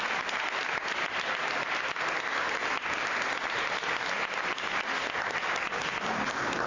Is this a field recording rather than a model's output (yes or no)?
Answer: yes